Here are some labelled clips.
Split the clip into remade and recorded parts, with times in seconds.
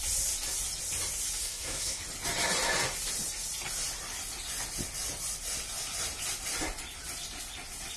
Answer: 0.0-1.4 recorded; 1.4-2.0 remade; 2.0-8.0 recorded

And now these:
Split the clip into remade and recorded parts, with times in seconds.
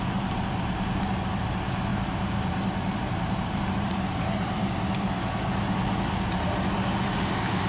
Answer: 0.0-1.9 recorded; 1.9-4.7 remade; 4.7-7.7 recorded